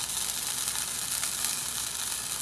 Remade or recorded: recorded